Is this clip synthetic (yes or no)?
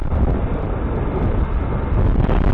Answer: no